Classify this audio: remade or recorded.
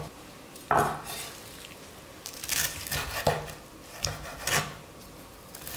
recorded